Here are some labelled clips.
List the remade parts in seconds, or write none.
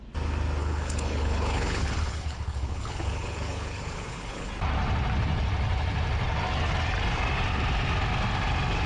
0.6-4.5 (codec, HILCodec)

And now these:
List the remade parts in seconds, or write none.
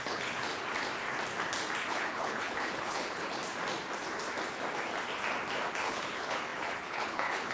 0.0-0.5 (codec, HILCodec); 1.9-3.4; 5.7-7.5